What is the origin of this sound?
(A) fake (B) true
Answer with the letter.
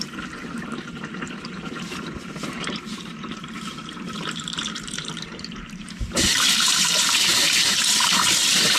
A